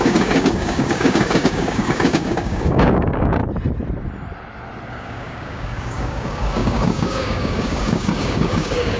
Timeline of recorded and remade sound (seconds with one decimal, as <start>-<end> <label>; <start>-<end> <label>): 0.0-3.4 remade; 3.4-4.9 recorded; 4.9-9.0 remade